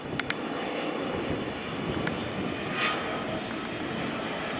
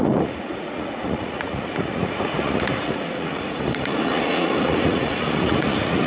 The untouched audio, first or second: first